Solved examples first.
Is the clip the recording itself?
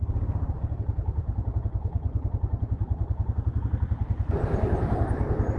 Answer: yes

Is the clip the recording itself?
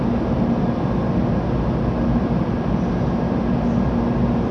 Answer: yes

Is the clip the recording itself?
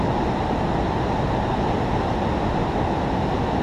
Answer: yes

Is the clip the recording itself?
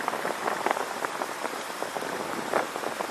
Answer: yes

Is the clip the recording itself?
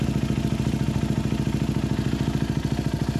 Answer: yes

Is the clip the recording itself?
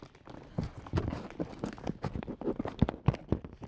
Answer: yes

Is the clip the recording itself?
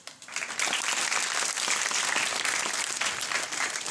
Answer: yes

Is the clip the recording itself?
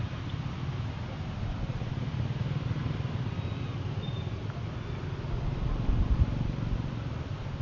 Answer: yes